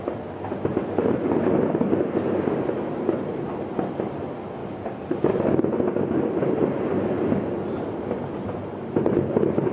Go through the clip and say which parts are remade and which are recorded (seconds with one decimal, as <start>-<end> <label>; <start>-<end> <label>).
0.0-4.6 recorded; 4.6-5.4 remade; 5.4-9.7 recorded